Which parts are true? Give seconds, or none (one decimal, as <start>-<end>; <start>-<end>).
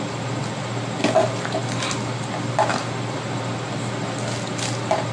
0.0-5.1